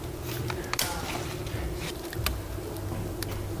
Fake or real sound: real